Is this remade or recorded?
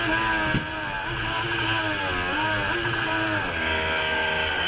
recorded